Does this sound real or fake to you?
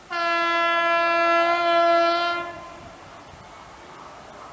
real